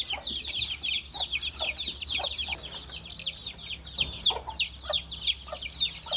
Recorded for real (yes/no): yes